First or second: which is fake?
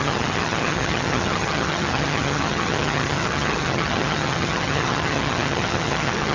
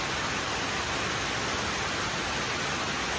first